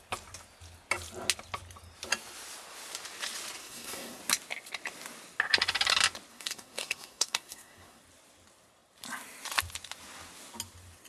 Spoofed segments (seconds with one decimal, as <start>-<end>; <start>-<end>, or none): 3.6-4.2; 6.3-8.0